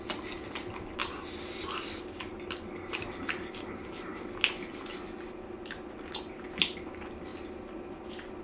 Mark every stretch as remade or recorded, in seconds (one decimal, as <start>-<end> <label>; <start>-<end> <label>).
0.0-8.4 recorded